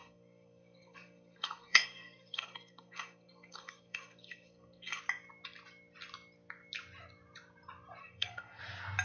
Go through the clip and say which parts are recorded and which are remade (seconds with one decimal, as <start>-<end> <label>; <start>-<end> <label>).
0.0-5.0 remade; 5.0-8.0 recorded; 8.0-8.6 remade; 8.6-9.0 recorded